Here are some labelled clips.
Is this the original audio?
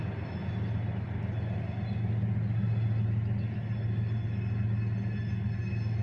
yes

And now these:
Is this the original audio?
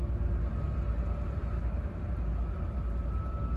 yes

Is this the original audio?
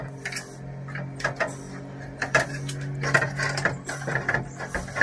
yes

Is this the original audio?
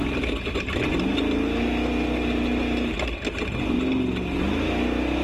yes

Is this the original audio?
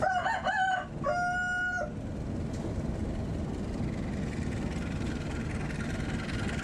yes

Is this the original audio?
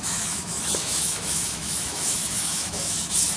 no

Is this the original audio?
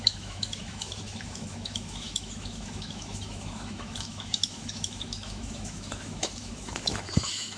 no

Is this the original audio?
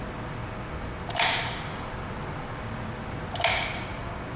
yes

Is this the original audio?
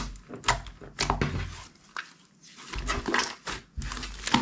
yes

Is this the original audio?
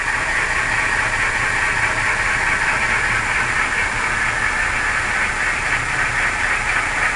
yes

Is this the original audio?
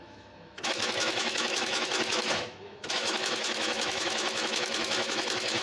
no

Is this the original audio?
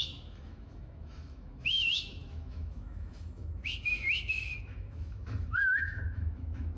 no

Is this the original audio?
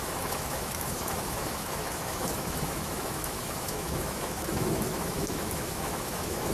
no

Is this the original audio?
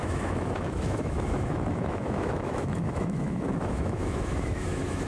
no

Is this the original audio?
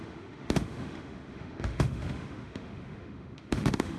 no